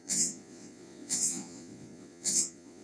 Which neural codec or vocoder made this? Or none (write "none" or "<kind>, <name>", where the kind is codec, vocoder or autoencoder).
vocoder, Vocos